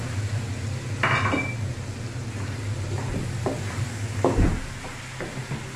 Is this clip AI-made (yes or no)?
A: no